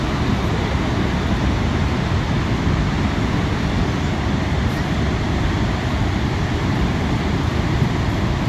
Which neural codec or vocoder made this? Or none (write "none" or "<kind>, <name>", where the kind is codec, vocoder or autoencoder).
none